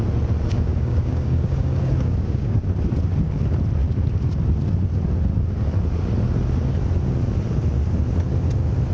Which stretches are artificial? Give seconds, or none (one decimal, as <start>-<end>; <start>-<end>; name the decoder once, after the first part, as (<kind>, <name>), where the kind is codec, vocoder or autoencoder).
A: 0.5-2.6 (codec, DAC)